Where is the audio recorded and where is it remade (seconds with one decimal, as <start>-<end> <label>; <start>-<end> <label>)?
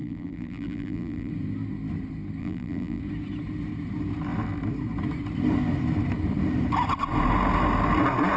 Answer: 0.0-1.3 remade; 1.3-2.4 recorded; 2.4-3.0 remade; 3.0-8.4 recorded